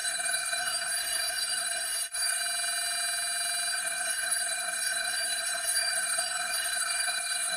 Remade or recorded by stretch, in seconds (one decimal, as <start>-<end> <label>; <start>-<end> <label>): 0.0-2.4 remade; 2.4-3.7 recorded; 3.7-7.6 remade